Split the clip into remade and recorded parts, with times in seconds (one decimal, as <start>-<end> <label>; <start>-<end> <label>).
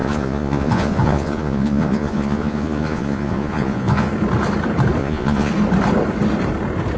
0.0-4.1 remade; 4.1-5.0 recorded; 5.0-5.5 remade; 5.5-7.0 recorded